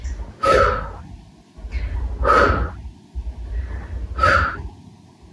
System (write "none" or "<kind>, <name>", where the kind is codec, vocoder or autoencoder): none